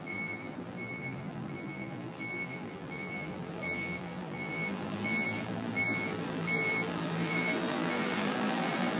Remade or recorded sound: remade